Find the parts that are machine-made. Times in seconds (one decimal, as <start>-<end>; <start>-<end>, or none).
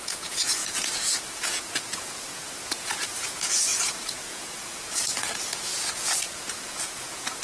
0.0-7.4